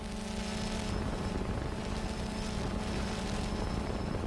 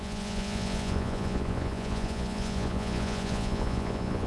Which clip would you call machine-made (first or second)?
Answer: second